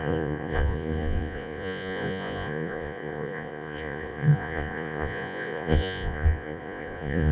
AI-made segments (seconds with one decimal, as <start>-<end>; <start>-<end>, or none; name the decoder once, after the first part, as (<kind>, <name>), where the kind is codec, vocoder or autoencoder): 0.0-7.3 (vocoder, Vocos)